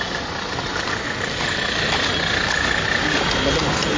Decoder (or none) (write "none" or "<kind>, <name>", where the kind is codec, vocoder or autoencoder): none